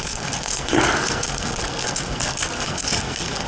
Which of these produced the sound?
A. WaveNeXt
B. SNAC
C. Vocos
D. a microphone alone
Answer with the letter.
B